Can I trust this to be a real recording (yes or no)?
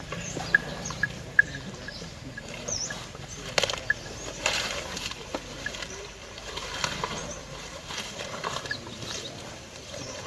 no